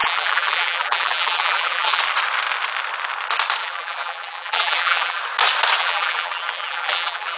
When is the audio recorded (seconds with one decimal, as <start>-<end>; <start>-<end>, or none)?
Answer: 2.0-3.6; 5.2-5.8